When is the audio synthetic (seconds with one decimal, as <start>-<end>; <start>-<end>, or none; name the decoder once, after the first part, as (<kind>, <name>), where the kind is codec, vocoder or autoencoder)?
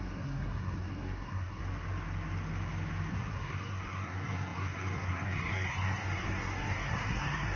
0.0-1.6 (codec, SNAC); 3.1-7.6